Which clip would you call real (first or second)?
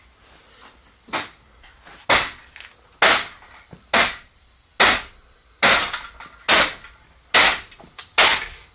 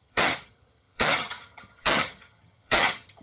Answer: first